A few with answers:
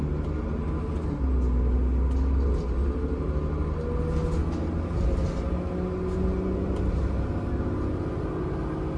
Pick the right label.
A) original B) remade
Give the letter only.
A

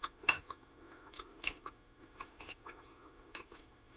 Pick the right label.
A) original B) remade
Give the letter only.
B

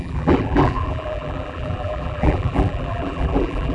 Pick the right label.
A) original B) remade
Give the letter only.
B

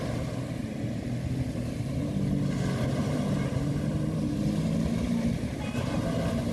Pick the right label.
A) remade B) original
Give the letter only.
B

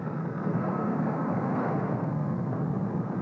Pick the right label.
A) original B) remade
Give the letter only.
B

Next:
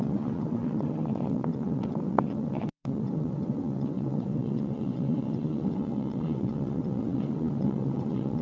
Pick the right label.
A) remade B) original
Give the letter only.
A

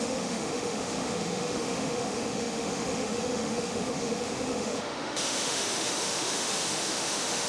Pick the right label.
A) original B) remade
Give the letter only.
B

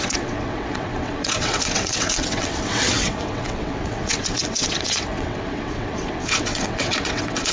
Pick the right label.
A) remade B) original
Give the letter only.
A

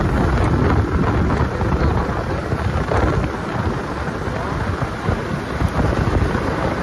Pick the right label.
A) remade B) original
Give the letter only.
B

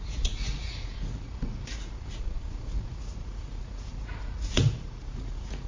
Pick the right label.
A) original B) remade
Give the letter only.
B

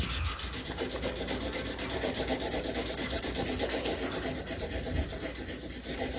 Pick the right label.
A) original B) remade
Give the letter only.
A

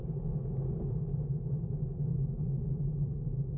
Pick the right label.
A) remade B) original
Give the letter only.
B